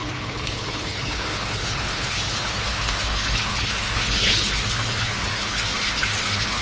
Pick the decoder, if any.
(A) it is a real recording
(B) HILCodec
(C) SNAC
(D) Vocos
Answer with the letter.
B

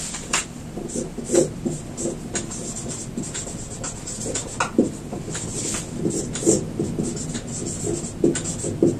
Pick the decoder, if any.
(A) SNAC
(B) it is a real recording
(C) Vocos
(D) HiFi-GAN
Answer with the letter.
B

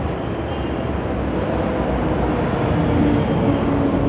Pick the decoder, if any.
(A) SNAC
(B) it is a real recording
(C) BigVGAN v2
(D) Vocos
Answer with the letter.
B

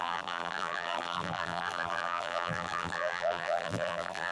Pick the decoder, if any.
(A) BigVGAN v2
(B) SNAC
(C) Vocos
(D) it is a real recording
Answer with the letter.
A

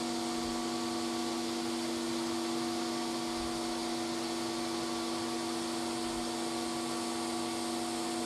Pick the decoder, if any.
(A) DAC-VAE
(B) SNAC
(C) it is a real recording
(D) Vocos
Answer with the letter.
C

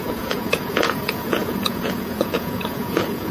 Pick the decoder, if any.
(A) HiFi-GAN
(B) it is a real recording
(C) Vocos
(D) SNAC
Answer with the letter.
C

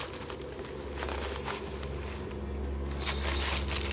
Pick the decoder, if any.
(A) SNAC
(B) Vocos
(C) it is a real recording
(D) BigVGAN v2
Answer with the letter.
C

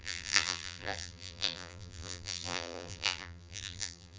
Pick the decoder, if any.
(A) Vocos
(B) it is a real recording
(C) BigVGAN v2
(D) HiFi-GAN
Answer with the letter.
C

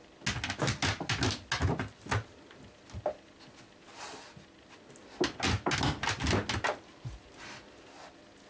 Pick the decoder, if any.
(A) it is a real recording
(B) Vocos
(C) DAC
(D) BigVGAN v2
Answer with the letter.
A